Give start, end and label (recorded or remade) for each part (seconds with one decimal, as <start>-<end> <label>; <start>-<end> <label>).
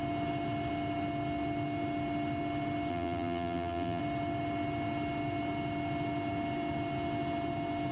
0.0-2.9 recorded; 2.9-4.0 remade; 4.0-7.9 recorded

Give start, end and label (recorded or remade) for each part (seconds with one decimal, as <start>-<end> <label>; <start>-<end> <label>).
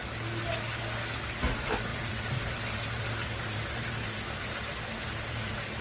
0.0-1.9 recorded; 1.9-5.8 remade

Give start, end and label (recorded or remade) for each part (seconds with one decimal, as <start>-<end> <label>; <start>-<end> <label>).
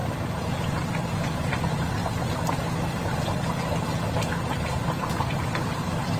0.0-2.0 remade; 2.0-5.7 recorded; 5.7-6.2 remade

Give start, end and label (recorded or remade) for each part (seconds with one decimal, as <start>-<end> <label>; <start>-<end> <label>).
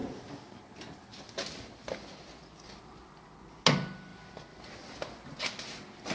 0.0-6.1 recorded